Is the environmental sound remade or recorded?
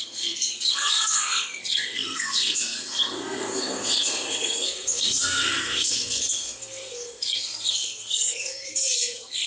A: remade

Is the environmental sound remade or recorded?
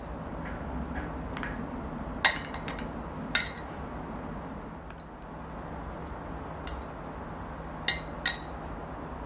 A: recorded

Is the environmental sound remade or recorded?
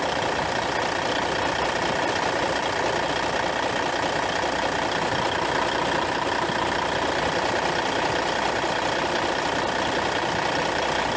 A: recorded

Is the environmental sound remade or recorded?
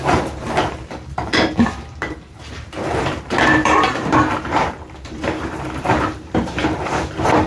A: remade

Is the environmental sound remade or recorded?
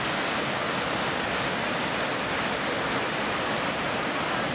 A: recorded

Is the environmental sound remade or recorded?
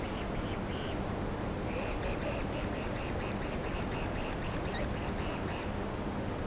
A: recorded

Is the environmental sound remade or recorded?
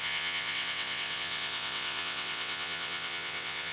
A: remade